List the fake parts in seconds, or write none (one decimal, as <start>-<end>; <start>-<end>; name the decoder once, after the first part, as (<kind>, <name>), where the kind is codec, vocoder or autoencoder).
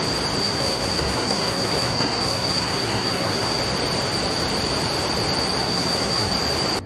0.4-3.6 (codec, SNAC); 5.6-6.3